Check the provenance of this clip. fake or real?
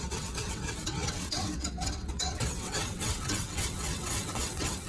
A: fake